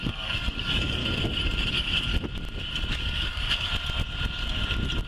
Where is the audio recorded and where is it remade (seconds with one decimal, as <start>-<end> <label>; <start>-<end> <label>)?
0.0-1.0 remade; 1.0-1.7 recorded; 1.7-2.1 remade; 2.1-2.9 recorded; 2.9-3.7 remade; 3.7-5.1 recorded